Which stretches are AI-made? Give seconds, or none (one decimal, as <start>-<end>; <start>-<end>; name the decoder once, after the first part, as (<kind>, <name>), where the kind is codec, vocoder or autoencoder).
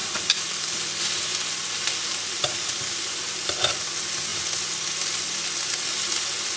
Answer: none